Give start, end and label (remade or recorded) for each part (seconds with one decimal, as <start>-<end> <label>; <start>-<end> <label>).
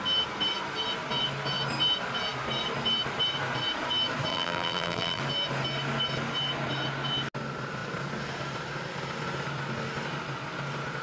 0.0-4.3 recorded; 4.3-5.2 remade; 5.2-11.0 recorded